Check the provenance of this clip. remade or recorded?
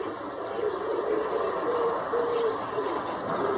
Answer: recorded